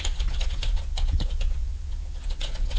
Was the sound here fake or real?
fake